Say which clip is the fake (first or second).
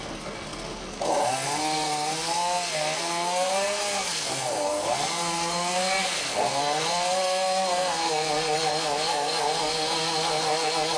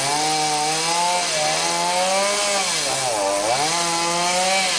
first